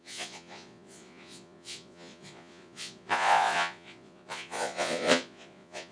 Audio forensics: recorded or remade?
remade